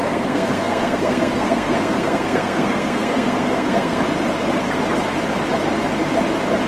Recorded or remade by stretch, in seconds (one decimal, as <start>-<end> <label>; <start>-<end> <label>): 0.0-4.0 remade; 4.0-6.7 recorded

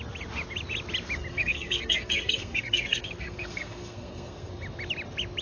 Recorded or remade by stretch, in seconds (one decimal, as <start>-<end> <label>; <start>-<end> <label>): 0.0-1.3 recorded; 1.3-4.5 remade; 4.5-5.4 recorded

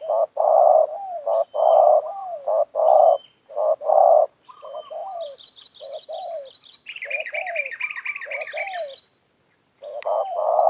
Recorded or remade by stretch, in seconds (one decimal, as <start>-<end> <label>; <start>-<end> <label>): 0.0-5.0 recorded; 5.0-7.4 remade; 7.4-10.7 recorded

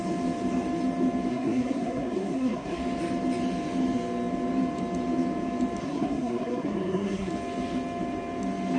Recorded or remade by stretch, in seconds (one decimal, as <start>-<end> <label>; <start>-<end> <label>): 0.0-1.3 recorded; 1.3-2.8 remade; 2.8-5.8 recorded; 5.8-7.3 remade; 7.3-8.8 recorded

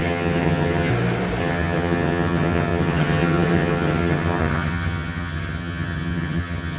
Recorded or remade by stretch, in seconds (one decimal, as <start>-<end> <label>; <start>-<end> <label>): 0.0-0.9 remade; 0.9-1.4 recorded; 1.4-6.8 remade

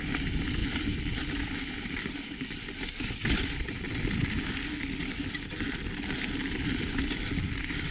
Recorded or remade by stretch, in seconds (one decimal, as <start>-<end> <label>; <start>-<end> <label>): 0.0-7.9 recorded

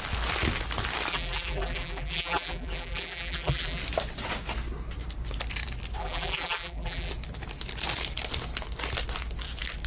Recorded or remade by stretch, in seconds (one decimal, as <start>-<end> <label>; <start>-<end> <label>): 0.0-1.1 recorded; 1.1-3.8 remade; 3.8-6.0 recorded; 6.0-7.1 remade; 7.1-9.9 recorded

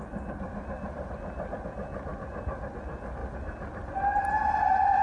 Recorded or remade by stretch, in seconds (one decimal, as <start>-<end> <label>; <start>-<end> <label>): 0.0-2.1 recorded; 2.1-2.7 remade; 2.7-3.2 recorded; 3.2-5.0 remade